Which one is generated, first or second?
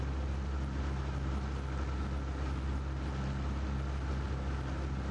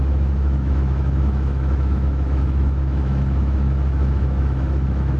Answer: second